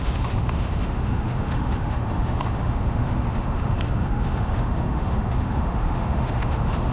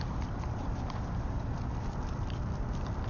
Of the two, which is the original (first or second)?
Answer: second